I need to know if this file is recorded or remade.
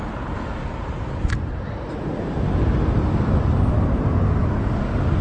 recorded